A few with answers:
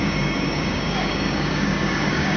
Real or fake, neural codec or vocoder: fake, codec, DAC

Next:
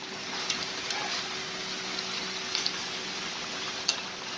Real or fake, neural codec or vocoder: real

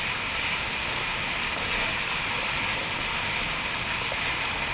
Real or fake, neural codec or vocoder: real